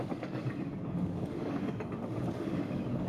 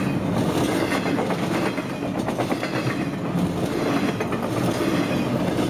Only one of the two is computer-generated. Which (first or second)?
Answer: first